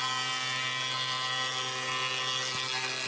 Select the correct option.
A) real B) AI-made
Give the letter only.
A